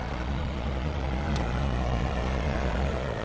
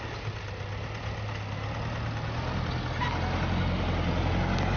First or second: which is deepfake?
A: first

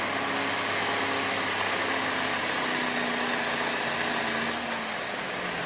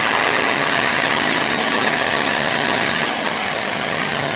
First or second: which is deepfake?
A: second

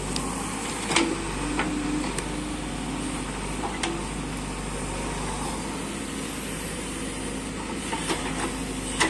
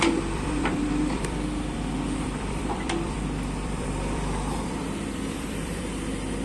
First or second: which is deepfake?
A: second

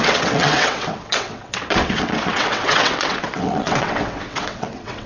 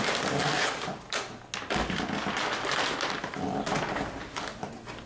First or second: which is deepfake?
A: first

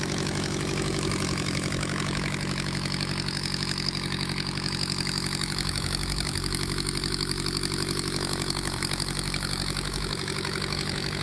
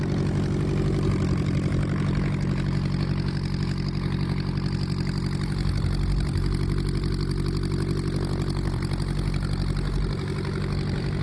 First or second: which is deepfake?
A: first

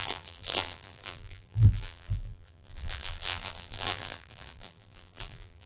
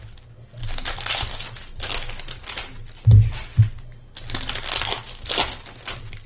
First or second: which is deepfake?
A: first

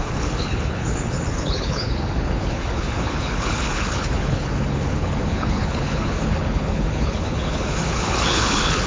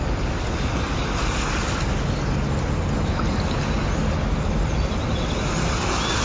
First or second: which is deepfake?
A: first